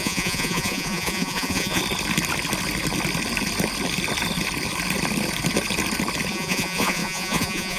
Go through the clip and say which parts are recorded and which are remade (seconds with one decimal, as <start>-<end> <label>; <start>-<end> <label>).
0.0-1.8 remade; 1.8-6.3 recorded; 6.3-7.8 remade